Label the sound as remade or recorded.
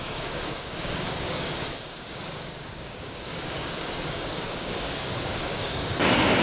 remade